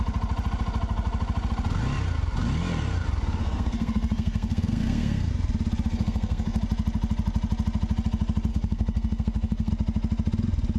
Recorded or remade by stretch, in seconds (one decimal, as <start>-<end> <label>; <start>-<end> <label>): 0.0-3.4 recorded; 3.4-5.3 remade; 5.3-5.9 recorded; 5.9-6.6 remade; 6.6-8.5 recorded; 8.5-9.7 remade; 9.7-10.8 recorded